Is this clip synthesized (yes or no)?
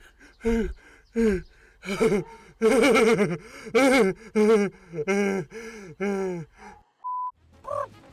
no